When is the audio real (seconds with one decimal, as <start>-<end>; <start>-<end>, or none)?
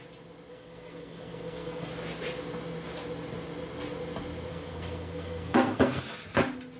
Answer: 0.0-0.5; 1.9-4.5; 6.0-6.8